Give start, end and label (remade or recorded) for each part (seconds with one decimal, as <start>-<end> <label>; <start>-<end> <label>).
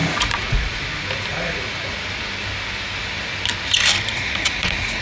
0.0-0.8 remade; 0.8-1.3 recorded; 1.3-2.0 remade; 2.0-4.1 recorded; 4.1-5.0 remade